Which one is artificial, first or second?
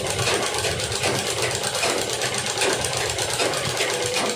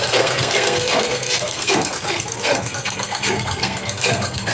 second